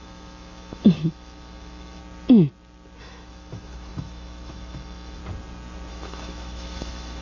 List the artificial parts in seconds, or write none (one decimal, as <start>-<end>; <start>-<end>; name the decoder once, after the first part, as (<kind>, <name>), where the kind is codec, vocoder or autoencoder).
0.0-2.0 (autoencoder, DAC-VAE); 3.0-5.2; 5.9-7.2